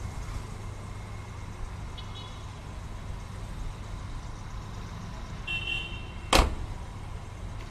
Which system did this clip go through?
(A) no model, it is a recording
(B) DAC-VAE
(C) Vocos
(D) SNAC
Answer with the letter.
A